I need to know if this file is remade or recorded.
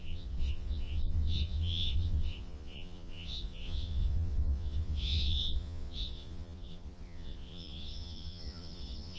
remade